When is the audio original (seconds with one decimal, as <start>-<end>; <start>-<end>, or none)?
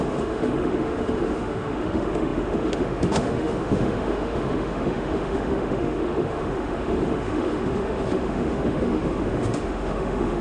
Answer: none